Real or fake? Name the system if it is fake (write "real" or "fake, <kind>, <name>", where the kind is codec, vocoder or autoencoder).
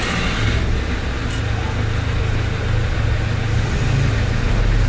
real